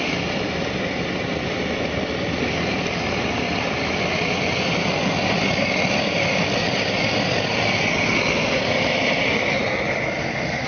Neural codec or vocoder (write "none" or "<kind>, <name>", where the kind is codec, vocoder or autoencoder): none